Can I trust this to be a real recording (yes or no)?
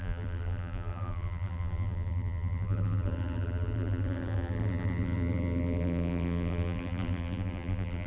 no